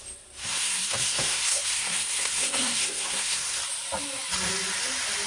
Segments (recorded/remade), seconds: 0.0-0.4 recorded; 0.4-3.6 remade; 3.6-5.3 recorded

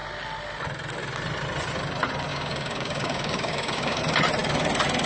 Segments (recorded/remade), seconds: 0.0-2.3 recorded; 2.3-4.0 remade; 4.0-5.1 recorded

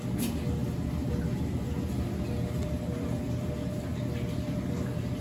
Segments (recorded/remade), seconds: 0.0-5.2 recorded

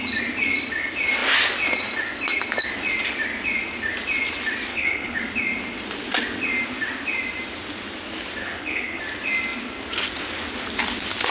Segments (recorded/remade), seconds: 0.0-4.7 recorded; 4.7-5.2 remade; 5.2-8.4 recorded; 8.4-9.0 remade; 9.0-11.3 recorded